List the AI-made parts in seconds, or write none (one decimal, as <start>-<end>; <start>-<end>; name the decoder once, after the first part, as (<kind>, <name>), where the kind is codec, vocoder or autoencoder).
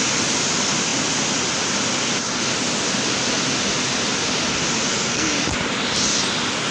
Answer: 4.9-5.4 (codec, SNAC)